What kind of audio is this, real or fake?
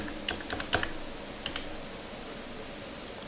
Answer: real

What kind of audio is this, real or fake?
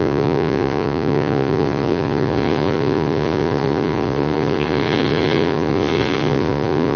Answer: fake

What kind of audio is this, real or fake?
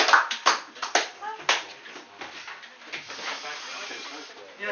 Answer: real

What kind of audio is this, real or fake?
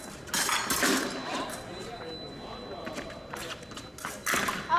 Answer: real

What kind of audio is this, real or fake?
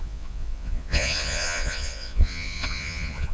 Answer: fake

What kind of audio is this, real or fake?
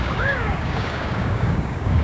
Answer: fake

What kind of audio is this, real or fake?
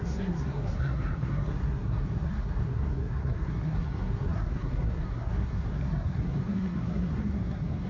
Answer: fake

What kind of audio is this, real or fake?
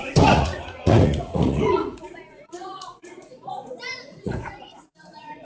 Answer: fake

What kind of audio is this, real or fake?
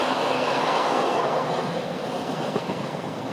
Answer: fake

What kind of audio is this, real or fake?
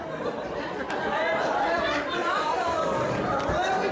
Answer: fake